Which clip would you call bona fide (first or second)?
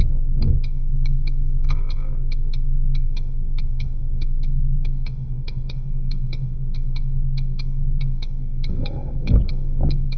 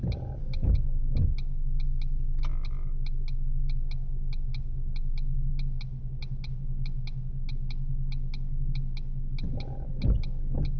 second